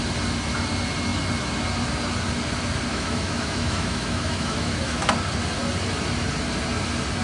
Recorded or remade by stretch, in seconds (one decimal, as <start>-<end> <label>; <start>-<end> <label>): 0.0-2.9 recorded; 2.9-5.1 remade; 5.1-7.2 recorded